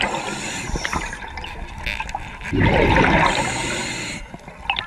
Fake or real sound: real